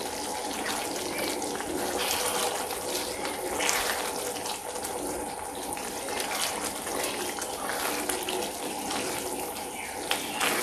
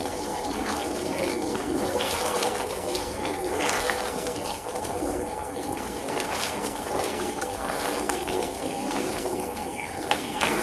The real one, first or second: first